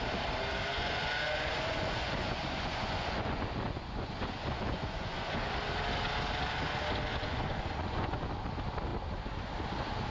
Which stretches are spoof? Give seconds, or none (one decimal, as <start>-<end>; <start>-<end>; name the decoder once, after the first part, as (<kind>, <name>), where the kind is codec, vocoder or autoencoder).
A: 0.7-5.5 (vocoder, Vocos); 7.1-8.3